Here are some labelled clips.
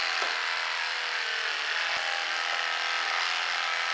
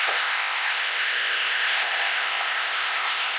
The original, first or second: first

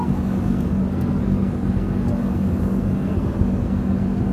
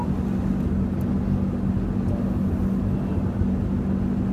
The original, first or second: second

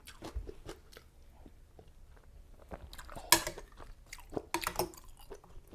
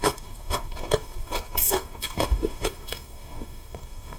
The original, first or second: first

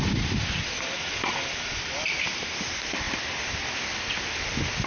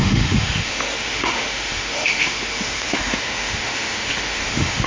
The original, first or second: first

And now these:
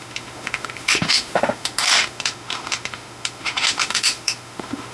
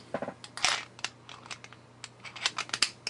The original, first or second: second